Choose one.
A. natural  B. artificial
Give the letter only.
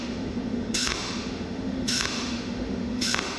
B